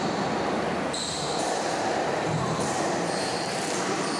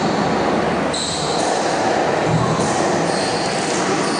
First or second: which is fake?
first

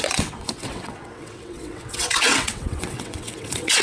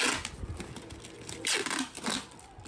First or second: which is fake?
first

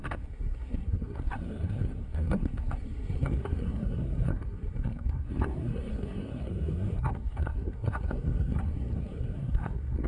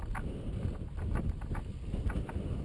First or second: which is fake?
first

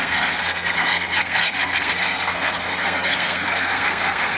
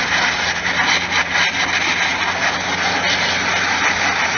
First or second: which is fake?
first